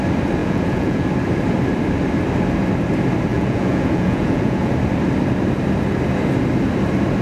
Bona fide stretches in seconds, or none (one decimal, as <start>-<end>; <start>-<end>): 0.0-0.4; 1.1-3.3; 4.7-7.2